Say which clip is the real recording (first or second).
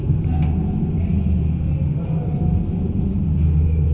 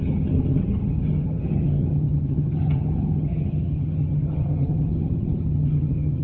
first